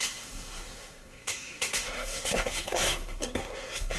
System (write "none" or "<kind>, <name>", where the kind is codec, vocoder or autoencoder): codec, SNAC